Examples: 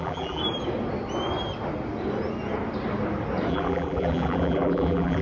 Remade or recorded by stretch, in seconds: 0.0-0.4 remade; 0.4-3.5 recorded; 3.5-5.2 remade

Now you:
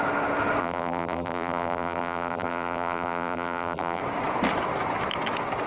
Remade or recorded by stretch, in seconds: 0.0-0.6 recorded; 0.6-4.0 remade; 4.0-5.7 recorded

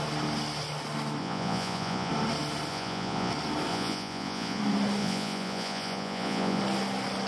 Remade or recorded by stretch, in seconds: 0.0-1.2 recorded; 1.2-2.1 remade; 2.1-2.7 recorded; 2.7-3.3 remade; 3.3-3.7 recorded; 3.7-4.6 remade; 4.6-5.0 recorded; 5.0-6.6 remade; 6.6-7.3 recorded

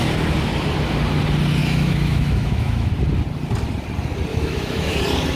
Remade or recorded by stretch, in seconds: 0.0-1.6 recorded; 1.6-2.9 remade; 2.9-4.3 recorded; 4.3-5.0 remade; 5.0-5.4 recorded

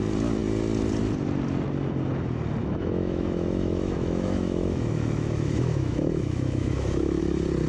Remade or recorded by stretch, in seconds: 0.0-2.6 recorded; 2.6-7.2 remade; 7.2-7.7 recorded